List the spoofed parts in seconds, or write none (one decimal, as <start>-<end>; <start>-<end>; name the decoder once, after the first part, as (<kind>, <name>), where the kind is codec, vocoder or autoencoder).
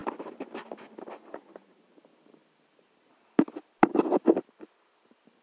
1.7-5.4 (vocoder, BigVGAN v2)